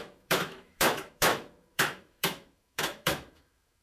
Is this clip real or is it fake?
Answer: fake